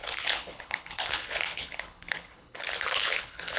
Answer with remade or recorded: remade